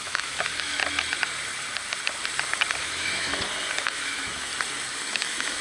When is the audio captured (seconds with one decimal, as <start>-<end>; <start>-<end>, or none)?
0.8-2.8; 3.3-3.8; 4.5-5.1